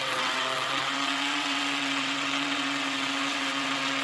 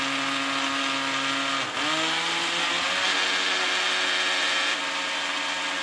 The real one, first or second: second